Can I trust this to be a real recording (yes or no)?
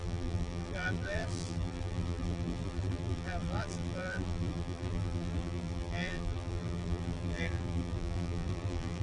no